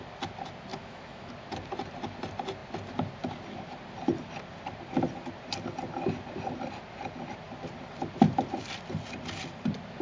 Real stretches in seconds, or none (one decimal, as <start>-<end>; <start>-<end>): 0.0-0.7; 1.3-10.0

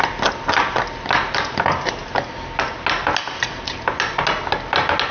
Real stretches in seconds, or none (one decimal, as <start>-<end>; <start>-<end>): 0.0-5.1

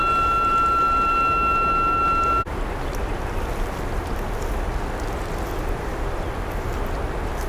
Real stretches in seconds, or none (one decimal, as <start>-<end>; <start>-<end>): 0.0-7.5

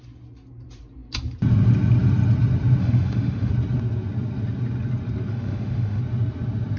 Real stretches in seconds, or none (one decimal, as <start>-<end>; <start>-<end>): 0.0-2.8; 3.5-5.3; 6.0-6.8

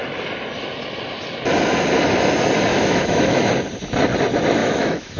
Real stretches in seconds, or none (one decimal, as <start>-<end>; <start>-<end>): 0.0-2.7; 3.5-4.6